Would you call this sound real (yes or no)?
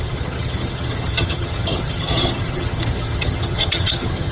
no